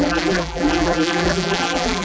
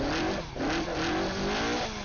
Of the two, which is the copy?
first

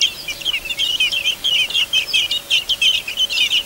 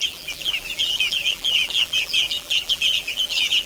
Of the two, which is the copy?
second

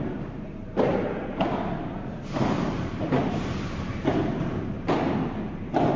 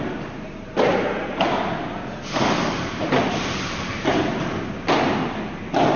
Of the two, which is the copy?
first